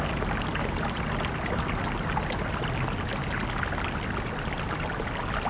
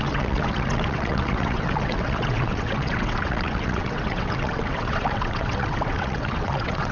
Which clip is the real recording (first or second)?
first